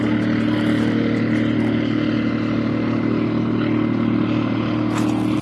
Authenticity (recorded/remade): recorded